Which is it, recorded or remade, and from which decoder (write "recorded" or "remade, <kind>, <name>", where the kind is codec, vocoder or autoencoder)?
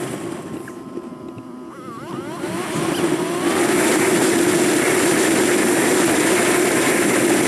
recorded